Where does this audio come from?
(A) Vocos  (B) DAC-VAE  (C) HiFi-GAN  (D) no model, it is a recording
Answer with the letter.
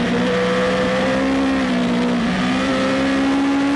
D